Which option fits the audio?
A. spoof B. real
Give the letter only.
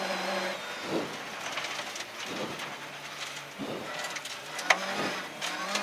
B